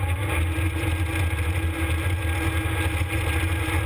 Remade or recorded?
recorded